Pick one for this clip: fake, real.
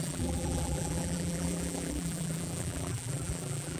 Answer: fake